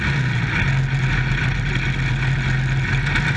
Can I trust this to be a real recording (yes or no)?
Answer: yes